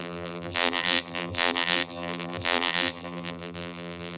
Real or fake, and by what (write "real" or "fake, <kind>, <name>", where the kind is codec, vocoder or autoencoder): fake, vocoder, BigVGAN v2